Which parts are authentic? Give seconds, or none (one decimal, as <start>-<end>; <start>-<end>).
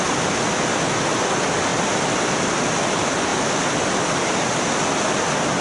0.0-5.6